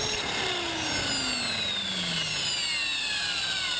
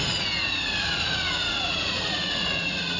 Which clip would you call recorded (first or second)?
first